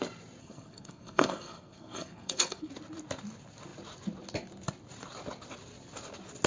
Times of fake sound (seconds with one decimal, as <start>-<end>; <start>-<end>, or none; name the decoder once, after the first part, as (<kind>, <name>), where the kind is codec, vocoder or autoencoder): 0.4-2.7 (codec, SNAC)